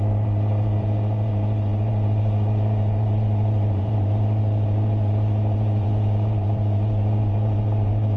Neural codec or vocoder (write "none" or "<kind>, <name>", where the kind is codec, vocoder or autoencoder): vocoder, BigVGAN v2